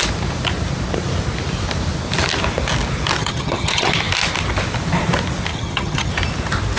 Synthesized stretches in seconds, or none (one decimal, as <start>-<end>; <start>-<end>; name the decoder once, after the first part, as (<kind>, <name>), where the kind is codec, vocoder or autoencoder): 3.2-3.9 (vocoder, HiFi-GAN); 5.5-6.1